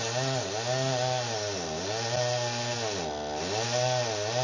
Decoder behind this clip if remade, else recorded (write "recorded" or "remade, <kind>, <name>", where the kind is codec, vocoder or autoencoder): recorded